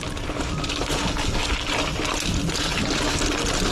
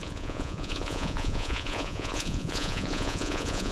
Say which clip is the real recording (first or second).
first